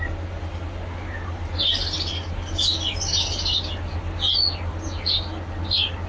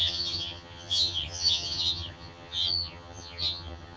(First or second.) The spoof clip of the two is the second